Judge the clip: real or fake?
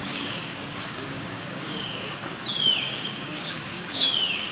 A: fake